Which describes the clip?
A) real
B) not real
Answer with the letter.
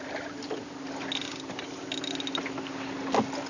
A